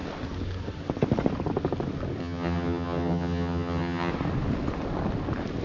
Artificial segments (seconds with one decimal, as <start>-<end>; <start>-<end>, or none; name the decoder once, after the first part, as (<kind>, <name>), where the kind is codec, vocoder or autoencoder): 2.2-4.1 (vocoder, HiFi-GAN)